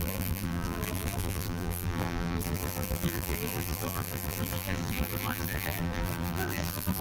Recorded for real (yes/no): no